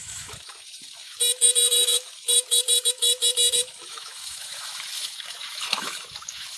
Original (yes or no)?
no